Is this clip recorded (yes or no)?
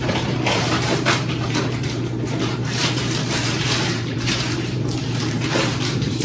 no